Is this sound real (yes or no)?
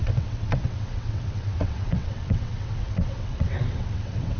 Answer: no